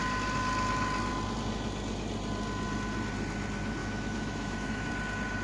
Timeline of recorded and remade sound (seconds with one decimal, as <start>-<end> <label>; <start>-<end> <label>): 0.0-3.8 recorded; 3.8-4.9 remade; 4.9-5.4 recorded